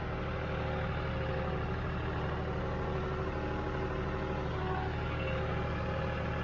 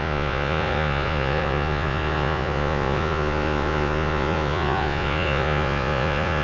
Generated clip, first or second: second